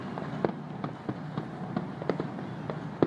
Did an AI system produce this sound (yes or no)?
no